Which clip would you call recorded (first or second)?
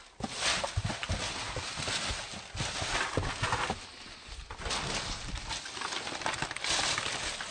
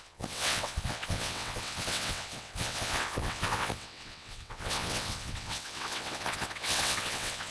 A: first